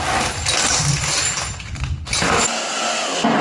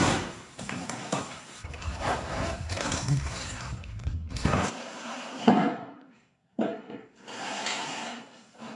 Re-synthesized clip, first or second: second